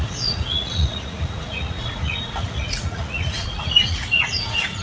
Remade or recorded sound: remade